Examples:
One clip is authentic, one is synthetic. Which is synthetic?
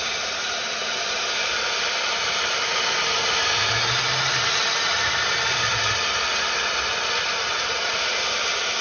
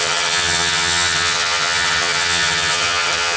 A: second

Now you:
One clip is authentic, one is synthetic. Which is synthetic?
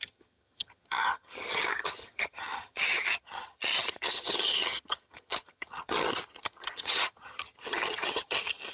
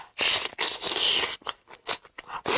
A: first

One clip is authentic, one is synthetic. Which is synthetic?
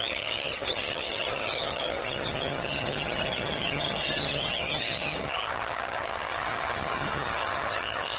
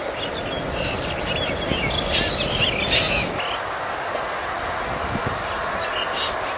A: first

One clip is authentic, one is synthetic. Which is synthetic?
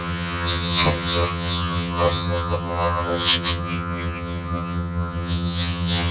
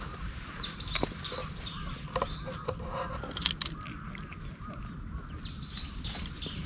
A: first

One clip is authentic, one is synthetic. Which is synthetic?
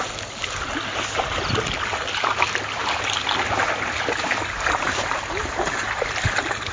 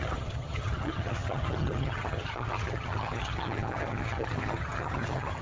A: second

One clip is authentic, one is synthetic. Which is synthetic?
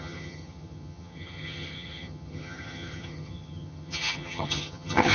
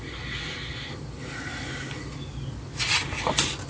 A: first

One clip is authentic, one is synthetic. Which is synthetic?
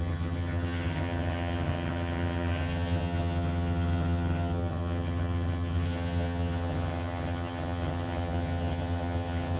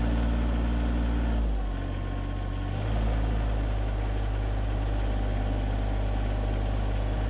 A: first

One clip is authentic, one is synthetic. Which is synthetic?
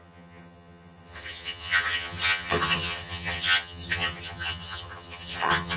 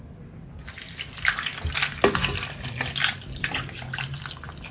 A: first